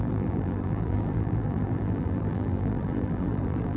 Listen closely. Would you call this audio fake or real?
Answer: fake